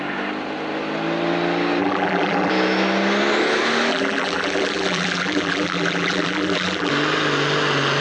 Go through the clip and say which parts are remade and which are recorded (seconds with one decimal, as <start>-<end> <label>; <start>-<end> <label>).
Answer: 0.0-1.8 recorded; 1.8-2.5 remade; 2.5-3.9 recorded; 3.9-6.9 remade; 6.9-8.0 recorded